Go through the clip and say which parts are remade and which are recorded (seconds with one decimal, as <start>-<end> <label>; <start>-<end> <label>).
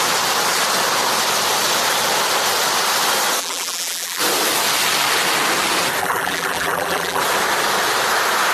0.0-3.4 recorded; 3.4-4.2 remade; 4.2-6.0 recorded; 6.0-7.2 remade; 7.2-8.5 recorded